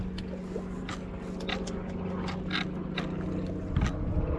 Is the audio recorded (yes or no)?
yes